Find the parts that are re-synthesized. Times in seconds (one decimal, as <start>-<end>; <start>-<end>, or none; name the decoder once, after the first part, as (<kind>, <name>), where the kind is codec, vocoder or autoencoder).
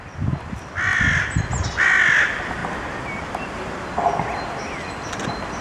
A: none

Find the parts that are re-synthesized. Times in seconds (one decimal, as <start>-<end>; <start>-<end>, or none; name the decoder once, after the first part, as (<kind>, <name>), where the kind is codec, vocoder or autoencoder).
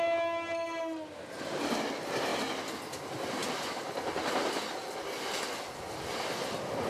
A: none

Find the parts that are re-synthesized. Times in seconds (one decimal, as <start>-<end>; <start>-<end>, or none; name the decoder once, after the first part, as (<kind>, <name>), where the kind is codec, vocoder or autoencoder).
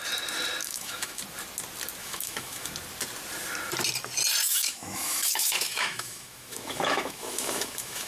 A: 0.6-1.2 (autoencoder, DAC-VAE); 2.0-2.7; 4.4-8.1